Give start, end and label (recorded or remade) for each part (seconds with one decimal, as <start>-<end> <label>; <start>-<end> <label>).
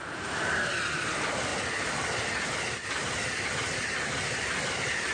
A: 0.0-5.1 recorded